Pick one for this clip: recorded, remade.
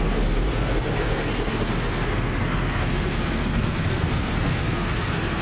remade